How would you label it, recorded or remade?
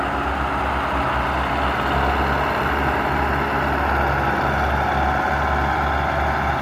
recorded